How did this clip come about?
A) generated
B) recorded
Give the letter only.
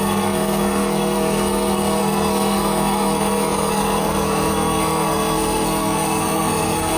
A